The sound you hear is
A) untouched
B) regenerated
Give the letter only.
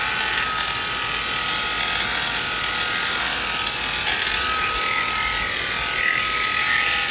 A